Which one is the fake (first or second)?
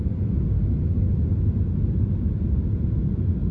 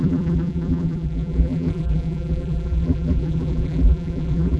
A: second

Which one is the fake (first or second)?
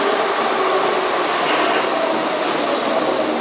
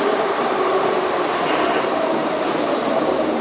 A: second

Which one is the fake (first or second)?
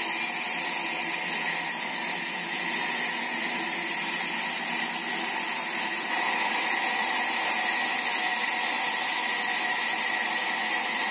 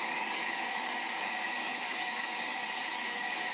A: second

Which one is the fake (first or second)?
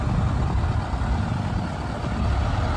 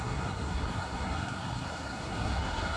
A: second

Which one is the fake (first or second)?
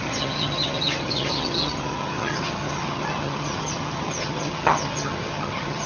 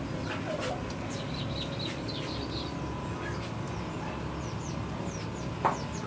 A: first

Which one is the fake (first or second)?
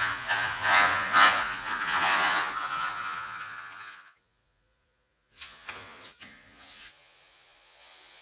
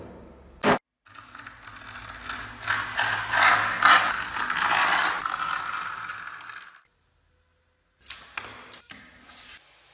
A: first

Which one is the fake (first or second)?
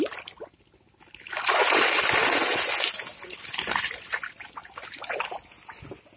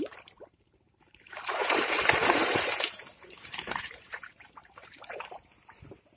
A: second